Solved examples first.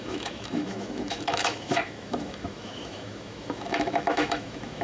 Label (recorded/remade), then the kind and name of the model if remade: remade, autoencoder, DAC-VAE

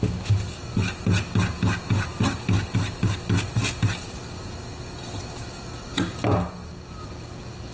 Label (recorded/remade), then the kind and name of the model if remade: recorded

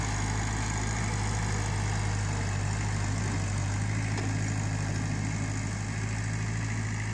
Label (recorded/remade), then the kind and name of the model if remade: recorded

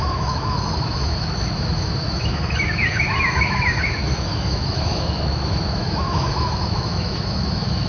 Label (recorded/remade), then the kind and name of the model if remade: remade, autoencoder, DAC-VAE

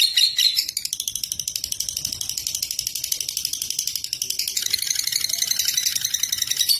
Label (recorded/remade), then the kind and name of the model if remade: recorded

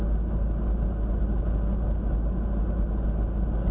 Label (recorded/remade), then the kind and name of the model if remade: recorded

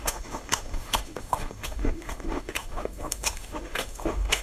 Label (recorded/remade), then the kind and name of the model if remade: remade, autoencoder, DAC-VAE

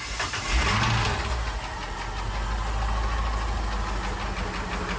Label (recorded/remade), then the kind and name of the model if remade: recorded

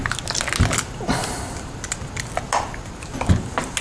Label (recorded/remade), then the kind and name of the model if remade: recorded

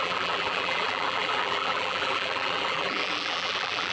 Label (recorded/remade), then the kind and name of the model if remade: remade, vocoder, BigVGAN v2